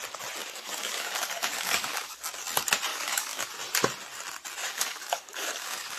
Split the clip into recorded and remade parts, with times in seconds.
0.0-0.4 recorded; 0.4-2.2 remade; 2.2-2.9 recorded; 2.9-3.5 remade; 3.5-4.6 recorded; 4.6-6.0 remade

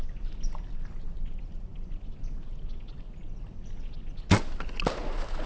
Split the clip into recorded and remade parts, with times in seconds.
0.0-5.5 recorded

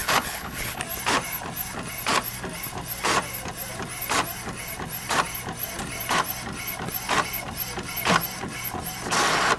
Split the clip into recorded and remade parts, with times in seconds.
0.0-0.8 remade; 0.8-9.6 recorded

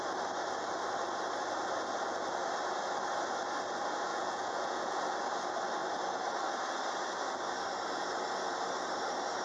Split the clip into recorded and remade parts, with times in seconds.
0.0-4.1 recorded; 4.1-5.0 remade; 5.0-9.4 recorded

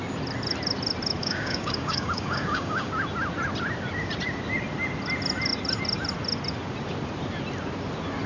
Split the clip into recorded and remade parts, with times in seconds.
0.0-1.2 recorded; 1.2-2.9 remade; 2.9-8.3 recorded

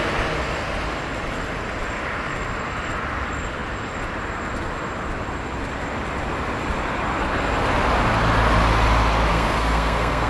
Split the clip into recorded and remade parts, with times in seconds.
0.0-9.3 recorded; 9.3-10.3 remade

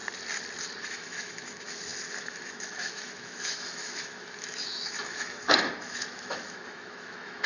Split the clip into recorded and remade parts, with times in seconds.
0.0-0.8 recorded; 0.8-7.5 remade